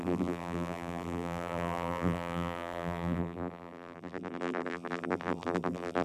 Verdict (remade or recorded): remade